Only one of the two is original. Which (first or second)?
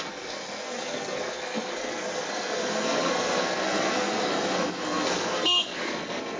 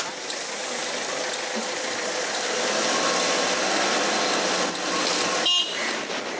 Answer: second